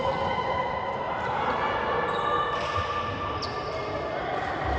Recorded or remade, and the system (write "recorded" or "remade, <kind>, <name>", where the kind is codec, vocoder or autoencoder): recorded